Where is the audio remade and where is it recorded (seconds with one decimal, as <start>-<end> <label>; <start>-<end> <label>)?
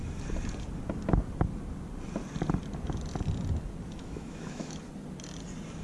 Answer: 0.0-4.0 recorded; 4.0-4.8 remade; 4.8-5.8 recorded